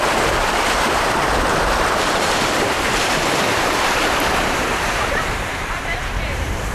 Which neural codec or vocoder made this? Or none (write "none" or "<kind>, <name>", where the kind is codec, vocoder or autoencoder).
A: vocoder, BigVGAN v2